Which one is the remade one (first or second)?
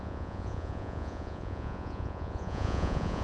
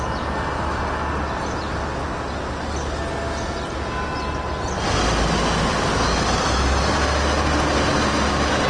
first